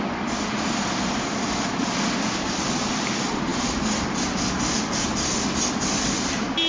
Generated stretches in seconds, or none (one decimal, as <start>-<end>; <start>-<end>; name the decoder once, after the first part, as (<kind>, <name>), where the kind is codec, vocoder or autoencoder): none